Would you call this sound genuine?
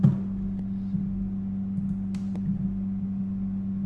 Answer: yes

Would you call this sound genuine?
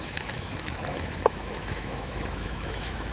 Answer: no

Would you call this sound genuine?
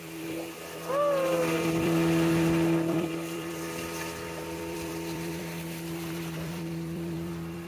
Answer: no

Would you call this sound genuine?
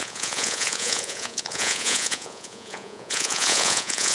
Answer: no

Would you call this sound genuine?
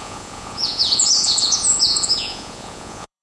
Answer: no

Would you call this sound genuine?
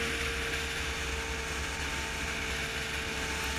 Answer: yes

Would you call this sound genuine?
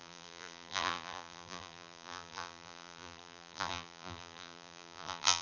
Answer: no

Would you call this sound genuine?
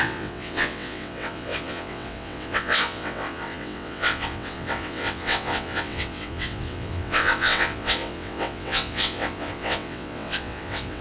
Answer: no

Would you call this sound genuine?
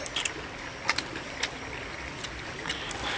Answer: yes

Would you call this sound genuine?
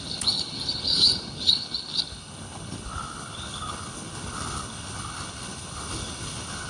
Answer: no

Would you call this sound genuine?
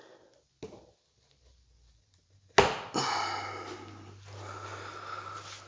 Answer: yes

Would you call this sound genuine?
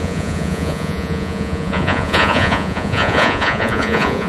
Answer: no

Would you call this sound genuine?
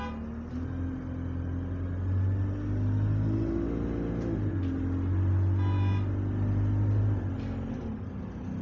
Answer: yes